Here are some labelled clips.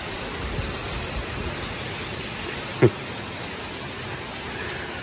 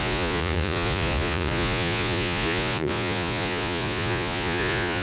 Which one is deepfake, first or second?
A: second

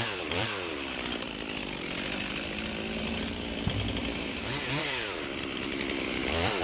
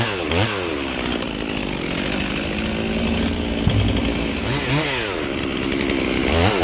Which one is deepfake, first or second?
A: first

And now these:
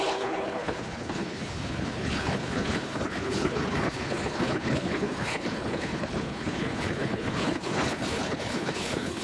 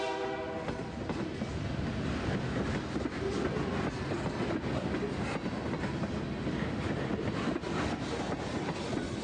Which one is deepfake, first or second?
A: first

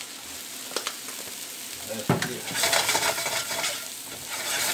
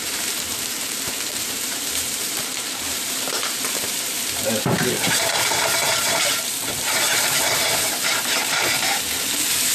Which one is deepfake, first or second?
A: second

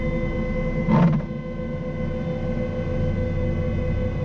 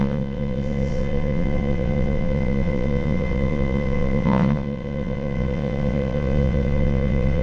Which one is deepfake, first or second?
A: second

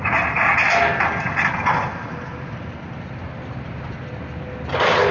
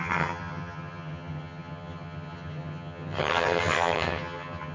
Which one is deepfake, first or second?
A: second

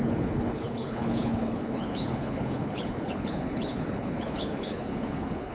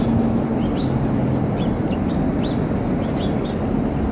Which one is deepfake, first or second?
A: first